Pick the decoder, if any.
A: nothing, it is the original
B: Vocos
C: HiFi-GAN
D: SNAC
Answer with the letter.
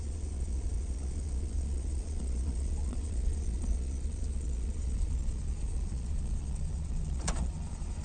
B